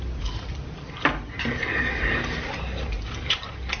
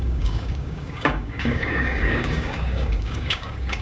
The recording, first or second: first